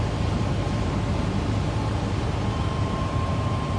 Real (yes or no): no